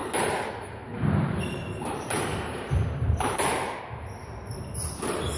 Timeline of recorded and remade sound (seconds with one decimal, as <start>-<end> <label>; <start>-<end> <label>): 0.0-0.9 recorded; 0.9-3.8 remade; 3.8-5.4 recorded